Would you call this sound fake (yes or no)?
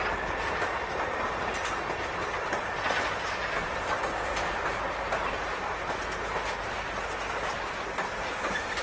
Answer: no